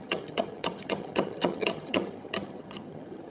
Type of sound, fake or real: fake